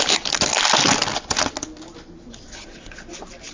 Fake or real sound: real